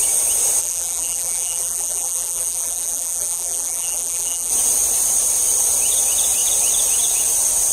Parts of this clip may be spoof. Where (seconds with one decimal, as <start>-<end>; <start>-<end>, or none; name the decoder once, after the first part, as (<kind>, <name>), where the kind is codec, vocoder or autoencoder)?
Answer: 0.6-4.5 (vocoder, BigVGAN v2)